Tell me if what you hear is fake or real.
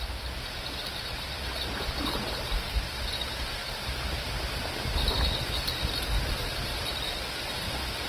real